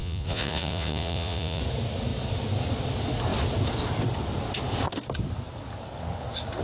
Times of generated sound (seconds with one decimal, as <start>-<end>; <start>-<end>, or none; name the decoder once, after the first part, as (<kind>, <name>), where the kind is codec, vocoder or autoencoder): 0.0-1.6 (vocoder, Vocos)